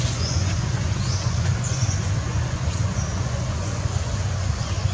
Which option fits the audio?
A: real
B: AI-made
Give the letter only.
B